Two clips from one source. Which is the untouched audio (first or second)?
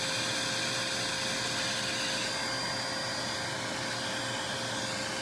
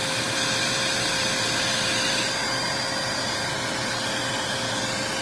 first